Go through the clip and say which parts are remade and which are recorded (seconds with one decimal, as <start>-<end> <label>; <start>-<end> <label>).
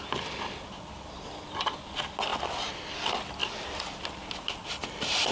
0.0-5.3 recorded